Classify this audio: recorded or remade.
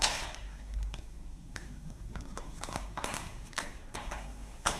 remade